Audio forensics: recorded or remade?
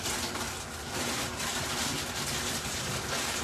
recorded